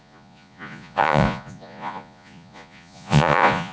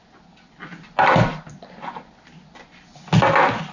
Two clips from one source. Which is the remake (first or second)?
first